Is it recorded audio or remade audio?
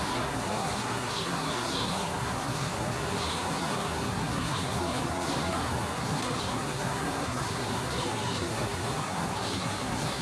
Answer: remade